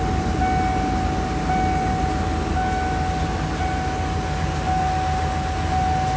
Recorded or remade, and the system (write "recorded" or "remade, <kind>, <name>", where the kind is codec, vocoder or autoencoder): recorded